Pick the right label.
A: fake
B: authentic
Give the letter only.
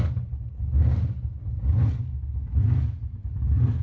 B